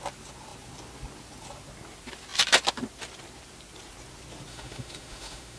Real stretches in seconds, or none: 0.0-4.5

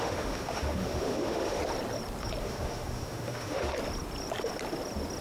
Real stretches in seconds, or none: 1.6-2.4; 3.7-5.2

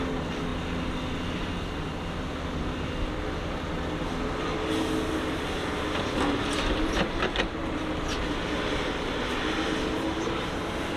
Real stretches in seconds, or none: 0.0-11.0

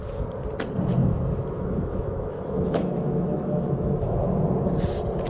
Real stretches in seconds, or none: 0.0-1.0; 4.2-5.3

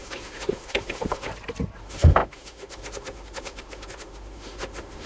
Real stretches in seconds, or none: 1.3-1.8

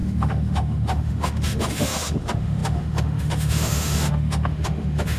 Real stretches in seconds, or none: none

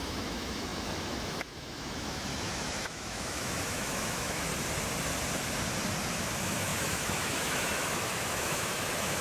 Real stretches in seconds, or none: 4.5-6.1